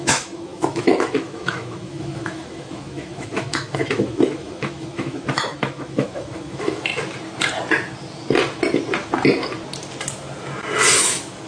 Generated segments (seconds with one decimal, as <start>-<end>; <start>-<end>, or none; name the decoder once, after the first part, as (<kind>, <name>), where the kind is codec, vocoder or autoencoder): 0.0-6.9 (autoencoder, DAC-VAE); 11.0-11.5